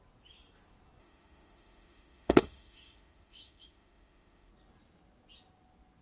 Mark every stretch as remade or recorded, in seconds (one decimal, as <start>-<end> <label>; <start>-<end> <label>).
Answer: 0.0-1.0 recorded; 1.0-4.5 remade; 4.5-6.0 recorded